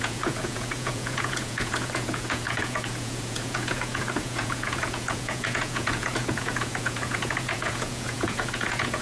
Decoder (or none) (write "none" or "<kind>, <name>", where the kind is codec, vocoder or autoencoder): vocoder, Vocos